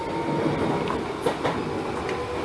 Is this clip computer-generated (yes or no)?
no